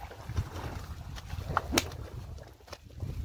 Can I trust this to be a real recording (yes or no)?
no